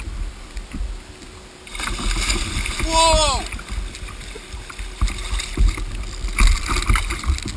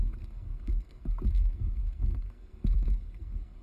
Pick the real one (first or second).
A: first